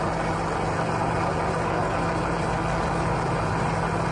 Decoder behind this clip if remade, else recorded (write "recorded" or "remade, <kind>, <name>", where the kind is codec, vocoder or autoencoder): recorded